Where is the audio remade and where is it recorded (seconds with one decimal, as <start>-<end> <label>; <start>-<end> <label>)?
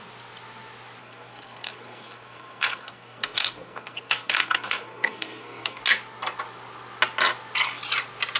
0.0-1.0 recorded; 1.0-5.8 remade; 5.8-8.4 recorded